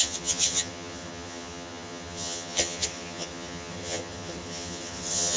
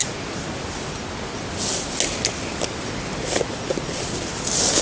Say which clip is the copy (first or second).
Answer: first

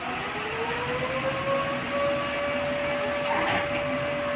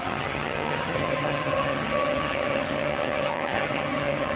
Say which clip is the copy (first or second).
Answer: second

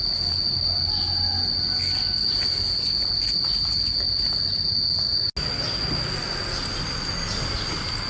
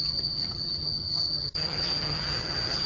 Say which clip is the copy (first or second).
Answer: second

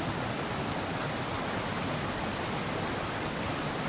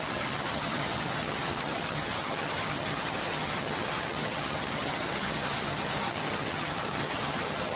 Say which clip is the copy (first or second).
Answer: second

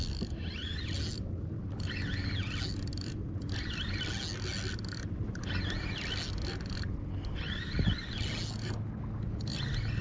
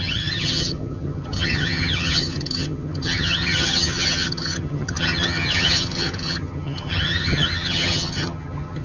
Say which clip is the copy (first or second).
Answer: second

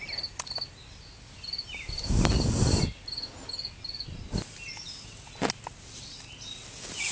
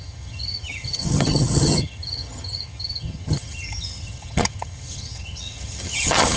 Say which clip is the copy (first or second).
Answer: second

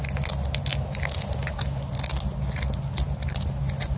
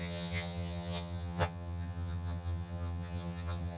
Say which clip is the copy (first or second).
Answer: second